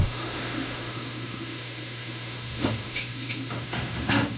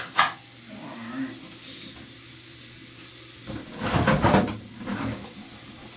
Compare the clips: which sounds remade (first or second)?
first